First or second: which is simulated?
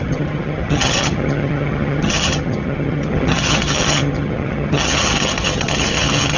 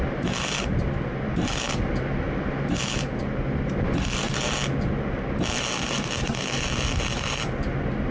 first